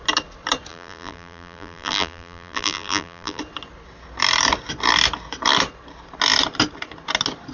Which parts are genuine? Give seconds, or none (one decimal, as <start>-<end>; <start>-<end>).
0.0-0.7; 3.4-7.5